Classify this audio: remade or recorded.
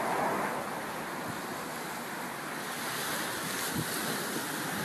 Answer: recorded